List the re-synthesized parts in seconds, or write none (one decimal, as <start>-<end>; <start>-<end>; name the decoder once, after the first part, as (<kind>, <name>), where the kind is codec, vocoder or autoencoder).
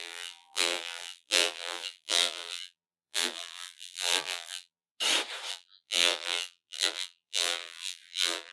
0.0-4.9 (vocoder, BigVGAN v2); 5.5-8.5